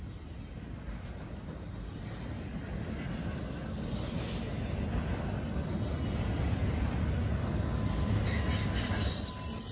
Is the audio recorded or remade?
recorded